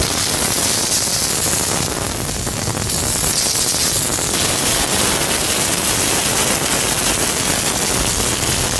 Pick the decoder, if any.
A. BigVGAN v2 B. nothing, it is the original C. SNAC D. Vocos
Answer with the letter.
B